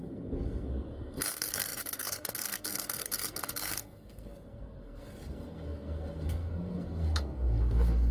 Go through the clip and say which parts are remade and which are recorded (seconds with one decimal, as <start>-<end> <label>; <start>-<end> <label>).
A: 0.0-8.1 remade